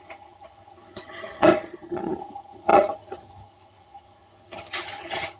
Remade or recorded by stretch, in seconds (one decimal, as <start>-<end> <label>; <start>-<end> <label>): 0.0-5.4 remade